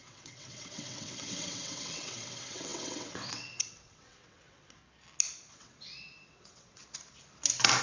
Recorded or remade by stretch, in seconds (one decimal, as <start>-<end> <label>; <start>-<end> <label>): 0.0-4.8 remade; 4.8-5.5 recorded; 5.5-6.8 remade; 6.8-7.8 recorded